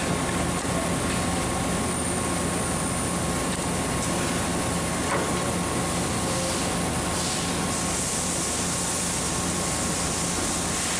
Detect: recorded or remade recorded